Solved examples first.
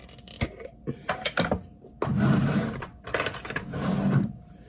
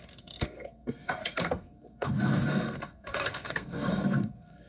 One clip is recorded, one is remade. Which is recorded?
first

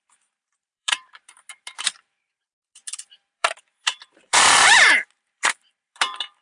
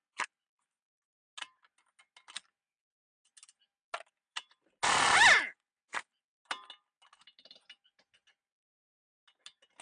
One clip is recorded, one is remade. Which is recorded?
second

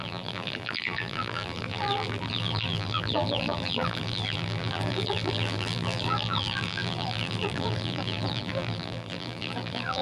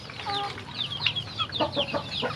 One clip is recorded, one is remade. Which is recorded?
second